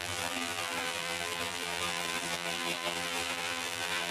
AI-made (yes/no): yes